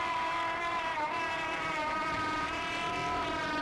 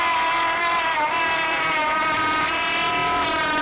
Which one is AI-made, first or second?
first